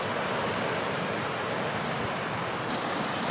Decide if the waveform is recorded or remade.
recorded